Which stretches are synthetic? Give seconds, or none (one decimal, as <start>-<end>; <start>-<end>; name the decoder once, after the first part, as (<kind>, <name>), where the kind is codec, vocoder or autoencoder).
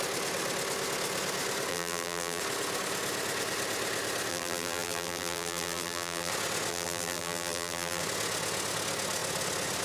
1.7-2.4 (vocoder, BigVGAN v2); 4.3-6.3; 6.7-8.0